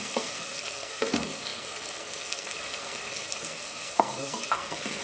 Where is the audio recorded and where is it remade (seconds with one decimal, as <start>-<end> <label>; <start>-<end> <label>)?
0.0-5.0 remade